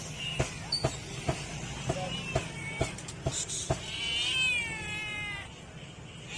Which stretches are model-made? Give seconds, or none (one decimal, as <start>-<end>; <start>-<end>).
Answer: none